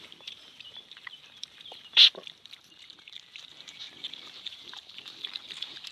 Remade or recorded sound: remade